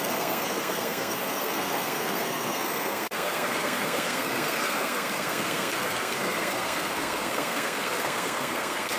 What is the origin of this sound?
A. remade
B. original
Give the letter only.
A